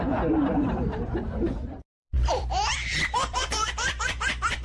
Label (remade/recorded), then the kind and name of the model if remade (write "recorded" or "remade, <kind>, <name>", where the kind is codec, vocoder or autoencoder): remade, vocoder, BigVGAN v2